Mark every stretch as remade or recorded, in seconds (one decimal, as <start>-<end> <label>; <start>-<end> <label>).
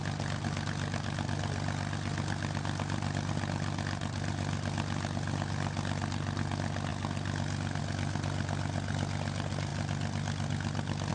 0.0-11.1 recorded